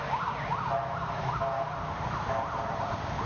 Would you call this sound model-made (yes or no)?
no